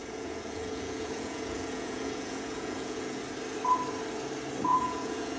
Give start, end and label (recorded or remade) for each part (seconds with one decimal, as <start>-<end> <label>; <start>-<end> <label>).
0.0-3.2 remade; 3.2-4.7 recorded; 4.7-5.4 remade